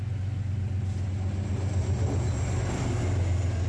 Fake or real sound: real